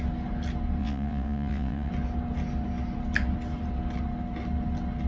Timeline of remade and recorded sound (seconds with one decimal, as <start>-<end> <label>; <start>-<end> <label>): 0.0-0.8 recorded; 0.8-1.9 remade; 1.9-5.1 recorded